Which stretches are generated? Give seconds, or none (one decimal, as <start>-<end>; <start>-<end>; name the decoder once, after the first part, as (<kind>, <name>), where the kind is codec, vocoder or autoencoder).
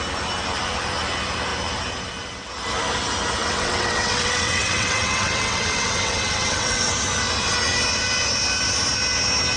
3.4-6.9 (vocoder, WaveNeXt)